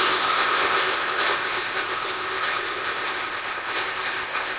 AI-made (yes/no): yes